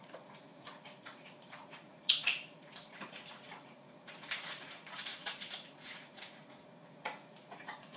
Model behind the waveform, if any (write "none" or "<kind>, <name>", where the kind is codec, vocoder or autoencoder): vocoder, Vocos